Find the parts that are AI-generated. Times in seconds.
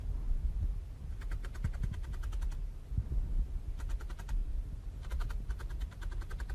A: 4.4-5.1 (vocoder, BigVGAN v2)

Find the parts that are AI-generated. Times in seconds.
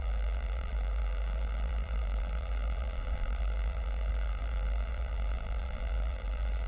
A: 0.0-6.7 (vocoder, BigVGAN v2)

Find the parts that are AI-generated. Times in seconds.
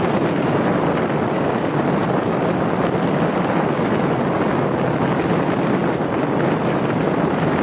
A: none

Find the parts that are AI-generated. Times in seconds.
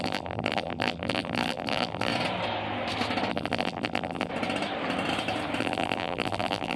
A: 0.0-2.1 (vocoder, BigVGAN v2); 3.3-4.3; 5.6-6.8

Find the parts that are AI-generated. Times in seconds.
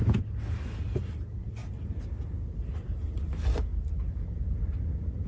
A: 1.6-2.7 (vocoder, BigVGAN v2)